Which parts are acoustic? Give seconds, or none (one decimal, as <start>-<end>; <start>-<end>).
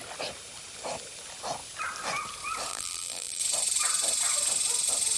0.0-2.7; 3.4-5.2